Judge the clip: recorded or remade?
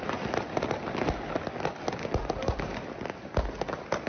recorded